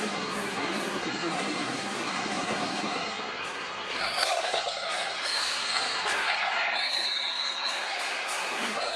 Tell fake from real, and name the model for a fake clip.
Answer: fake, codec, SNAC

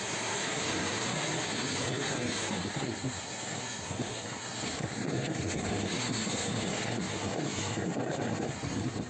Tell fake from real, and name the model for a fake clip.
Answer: fake, codec, SNAC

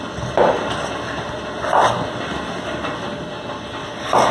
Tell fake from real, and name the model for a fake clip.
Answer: real